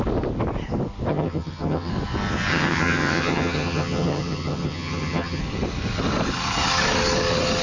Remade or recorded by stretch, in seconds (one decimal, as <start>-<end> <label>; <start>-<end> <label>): 0.0-1.1 recorded; 1.1-1.9 remade; 1.9-2.5 recorded; 2.5-5.4 remade; 5.4-7.6 recorded